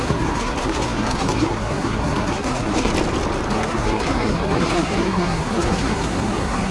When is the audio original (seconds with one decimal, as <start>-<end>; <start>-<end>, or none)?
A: 2.9-3.5